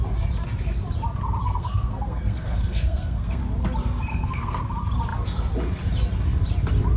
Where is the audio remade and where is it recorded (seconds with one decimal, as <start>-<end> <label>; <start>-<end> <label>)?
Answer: 0.0-1.4 recorded; 1.4-3.4 remade; 3.4-4.1 recorded; 4.1-4.6 remade; 4.6-7.0 recorded